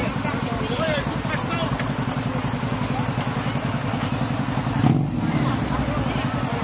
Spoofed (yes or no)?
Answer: no